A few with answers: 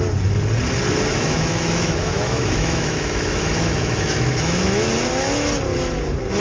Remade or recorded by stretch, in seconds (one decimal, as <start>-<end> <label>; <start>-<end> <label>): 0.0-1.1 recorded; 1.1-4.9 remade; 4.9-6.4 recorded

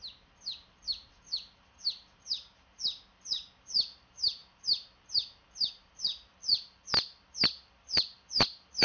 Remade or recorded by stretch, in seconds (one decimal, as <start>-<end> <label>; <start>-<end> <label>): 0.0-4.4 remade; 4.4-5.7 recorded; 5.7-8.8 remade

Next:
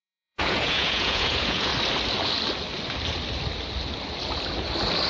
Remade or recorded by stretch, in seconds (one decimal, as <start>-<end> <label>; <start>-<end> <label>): 0.0-1.7 remade; 1.7-5.1 recorded